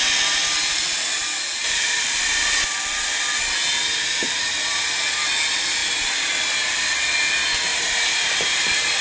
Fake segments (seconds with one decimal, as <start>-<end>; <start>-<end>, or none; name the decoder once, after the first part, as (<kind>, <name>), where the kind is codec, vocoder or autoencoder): 1.6-2.7 (vocoder, BigVGAN v2); 4.0-5.0; 5.8-6.3; 7.7-9.0